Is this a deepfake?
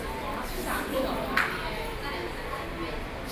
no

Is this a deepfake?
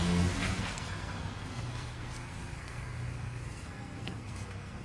yes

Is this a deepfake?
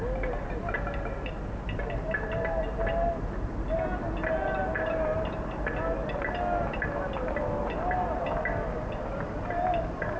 no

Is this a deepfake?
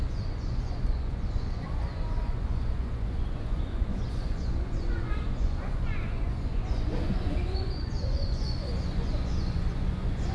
yes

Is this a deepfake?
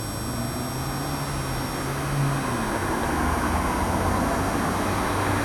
no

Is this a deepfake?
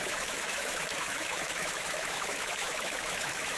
yes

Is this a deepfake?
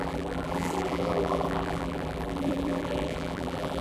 yes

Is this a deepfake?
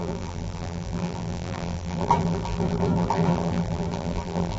yes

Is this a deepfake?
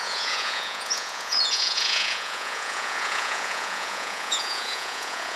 yes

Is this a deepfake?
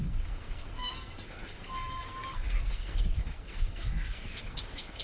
yes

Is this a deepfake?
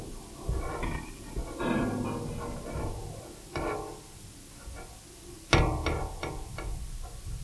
no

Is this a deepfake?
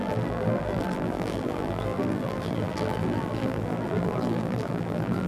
yes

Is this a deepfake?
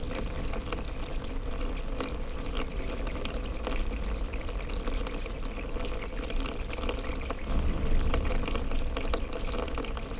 no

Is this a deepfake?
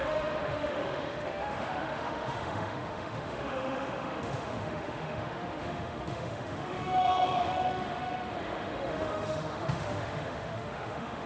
yes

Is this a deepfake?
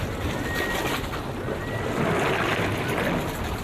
no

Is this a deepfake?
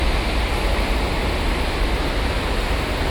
no